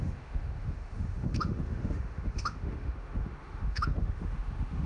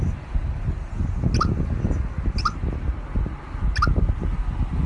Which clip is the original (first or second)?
second